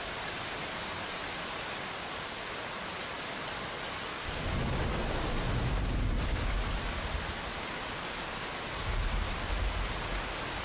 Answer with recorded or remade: recorded